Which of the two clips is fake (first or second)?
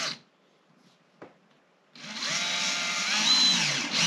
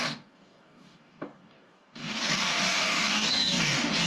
second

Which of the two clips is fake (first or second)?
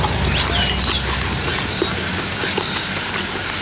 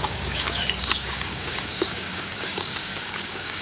second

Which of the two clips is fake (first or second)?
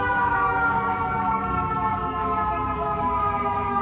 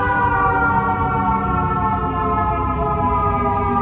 first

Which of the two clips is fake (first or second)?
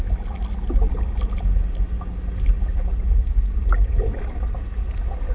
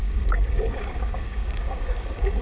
second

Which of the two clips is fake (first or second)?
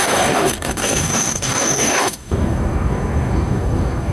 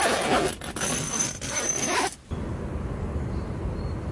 first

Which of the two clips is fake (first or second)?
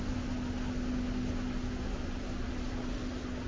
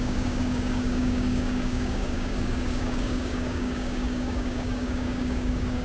second